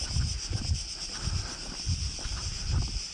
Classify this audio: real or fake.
real